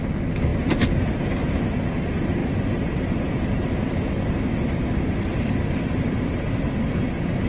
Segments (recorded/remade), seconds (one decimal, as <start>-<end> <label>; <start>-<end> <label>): 0.0-7.5 recorded